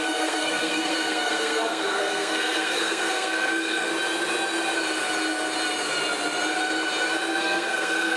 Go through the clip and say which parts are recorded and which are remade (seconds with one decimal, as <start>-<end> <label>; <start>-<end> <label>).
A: 0.0-3.9 remade; 3.9-7.4 recorded; 7.4-8.2 remade